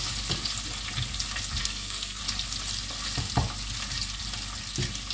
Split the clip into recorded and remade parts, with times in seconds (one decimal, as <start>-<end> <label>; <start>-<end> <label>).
0.0-1.6 recorded; 1.6-2.2 remade; 2.2-5.1 recorded